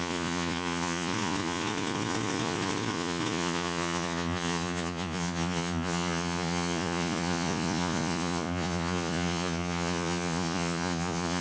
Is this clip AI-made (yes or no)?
yes